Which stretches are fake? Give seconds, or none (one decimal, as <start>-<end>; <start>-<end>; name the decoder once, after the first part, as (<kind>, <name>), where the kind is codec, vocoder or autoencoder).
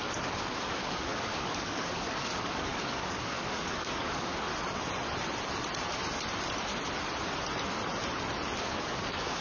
0.0-4.5 (codec, DAC); 8.6-9.4